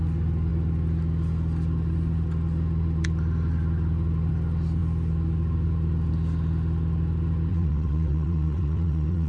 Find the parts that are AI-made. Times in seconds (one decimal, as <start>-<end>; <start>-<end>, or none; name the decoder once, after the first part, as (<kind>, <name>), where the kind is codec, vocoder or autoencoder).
7.5-9.3 (vocoder, WaveNeXt)